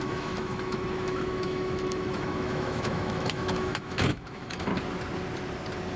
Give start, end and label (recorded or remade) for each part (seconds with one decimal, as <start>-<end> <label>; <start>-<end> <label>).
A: 0.0-4.7 remade; 4.7-6.0 recorded